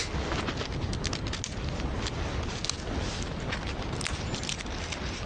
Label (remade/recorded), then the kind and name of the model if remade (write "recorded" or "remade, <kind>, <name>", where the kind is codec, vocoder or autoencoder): recorded